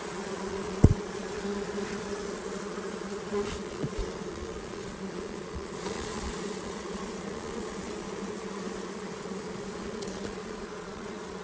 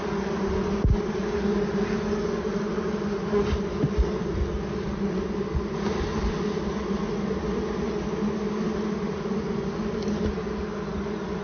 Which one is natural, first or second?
second